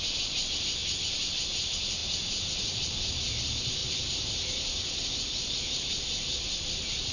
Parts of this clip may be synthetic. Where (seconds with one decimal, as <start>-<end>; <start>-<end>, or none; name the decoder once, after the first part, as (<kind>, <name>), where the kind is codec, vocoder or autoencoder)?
3.8-5.1 (vocoder, BigVGAN v2); 6.1-7.1